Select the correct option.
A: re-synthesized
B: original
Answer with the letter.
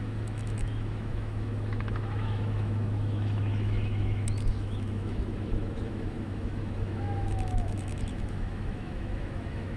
A